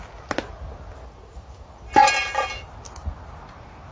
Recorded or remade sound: recorded